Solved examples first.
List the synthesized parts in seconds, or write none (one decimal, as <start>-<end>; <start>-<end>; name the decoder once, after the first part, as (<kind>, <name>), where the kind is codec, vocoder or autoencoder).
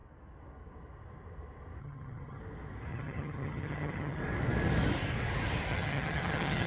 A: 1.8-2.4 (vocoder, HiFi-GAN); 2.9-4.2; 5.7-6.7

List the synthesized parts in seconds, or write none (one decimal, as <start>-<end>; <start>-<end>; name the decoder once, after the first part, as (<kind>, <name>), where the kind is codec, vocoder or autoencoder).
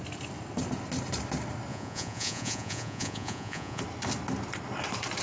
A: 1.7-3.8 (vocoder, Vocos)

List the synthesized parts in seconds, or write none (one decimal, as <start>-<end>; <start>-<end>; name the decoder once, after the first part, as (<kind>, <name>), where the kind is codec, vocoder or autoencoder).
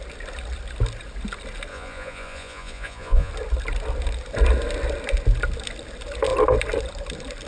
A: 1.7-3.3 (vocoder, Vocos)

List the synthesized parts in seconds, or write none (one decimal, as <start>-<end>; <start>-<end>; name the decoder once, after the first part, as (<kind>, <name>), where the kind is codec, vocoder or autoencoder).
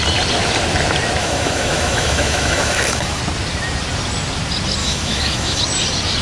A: 1.2-3.2 (autoencoder, DAC-VAE); 4.8-5.6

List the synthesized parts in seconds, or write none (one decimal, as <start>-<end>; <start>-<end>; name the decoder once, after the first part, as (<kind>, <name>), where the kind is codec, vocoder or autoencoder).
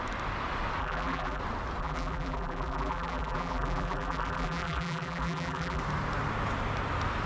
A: 0.8-1.4 (vocoder, BigVGAN v2); 1.8-5.8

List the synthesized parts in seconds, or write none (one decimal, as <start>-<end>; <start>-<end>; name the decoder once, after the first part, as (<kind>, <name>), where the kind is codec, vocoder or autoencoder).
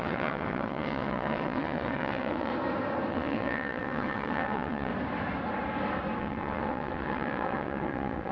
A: 0.0-2.5 (vocoder, WaveNeXt); 3.1-4.9; 6.2-8.3